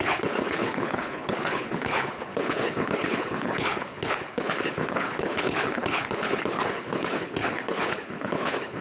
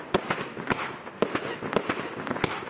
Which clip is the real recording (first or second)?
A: second